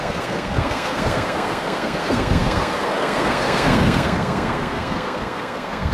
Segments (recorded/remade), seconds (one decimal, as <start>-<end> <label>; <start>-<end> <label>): 0.0-5.9 remade

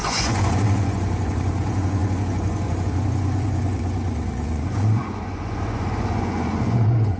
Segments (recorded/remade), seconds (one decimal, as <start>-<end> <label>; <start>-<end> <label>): 0.0-7.2 remade

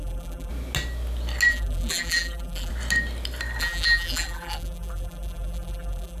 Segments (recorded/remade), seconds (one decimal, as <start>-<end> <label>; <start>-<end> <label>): 0.0-0.5 remade; 0.5-1.5 recorded; 1.5-2.7 remade; 2.7-3.6 recorded; 3.6-6.2 remade

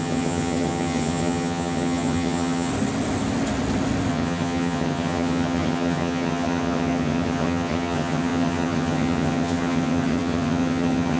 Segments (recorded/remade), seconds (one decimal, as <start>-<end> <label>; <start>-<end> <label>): 0.0-2.7 remade; 2.7-4.1 recorded; 4.1-11.2 remade

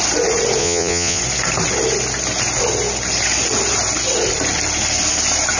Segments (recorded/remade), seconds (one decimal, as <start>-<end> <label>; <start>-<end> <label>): 0.0-0.6 recorded; 0.6-1.2 remade; 1.2-5.6 recorded